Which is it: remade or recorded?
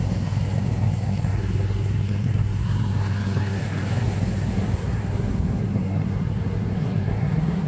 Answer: remade